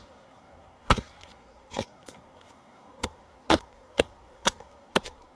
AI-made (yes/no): yes